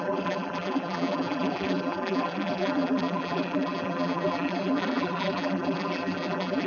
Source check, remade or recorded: remade